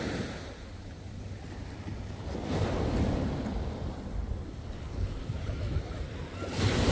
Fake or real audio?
real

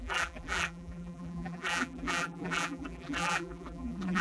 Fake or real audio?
fake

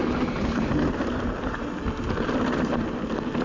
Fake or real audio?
real